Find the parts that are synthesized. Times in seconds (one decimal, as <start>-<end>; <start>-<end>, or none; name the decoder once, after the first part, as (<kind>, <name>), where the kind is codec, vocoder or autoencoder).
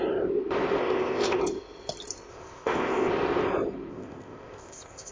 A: 0.8-1.4 (codec, ZipCodec); 2.3-3.1; 3.9-5.1